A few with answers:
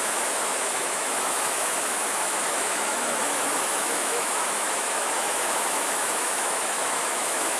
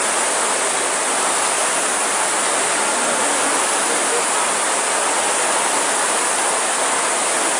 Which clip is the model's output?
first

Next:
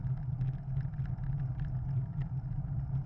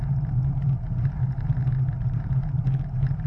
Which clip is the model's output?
second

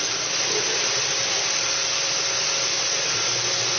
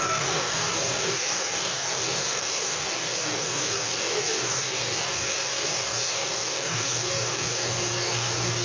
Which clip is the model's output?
second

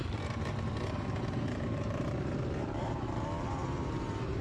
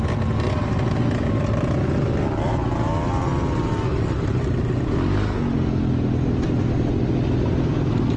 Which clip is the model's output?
first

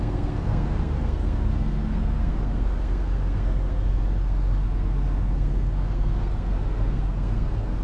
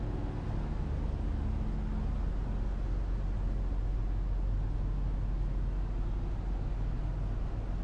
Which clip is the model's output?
first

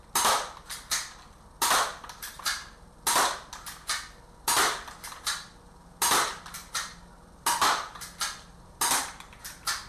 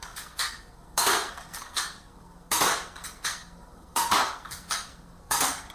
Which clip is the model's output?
second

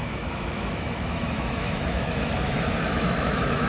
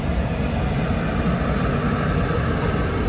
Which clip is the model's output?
first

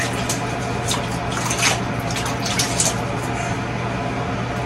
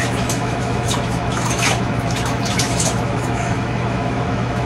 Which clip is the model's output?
second